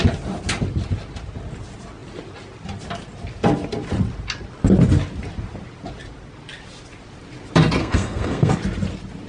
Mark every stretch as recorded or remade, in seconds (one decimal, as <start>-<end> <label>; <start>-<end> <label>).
0.0-7.8 recorded; 7.8-8.5 remade; 8.5-9.3 recorded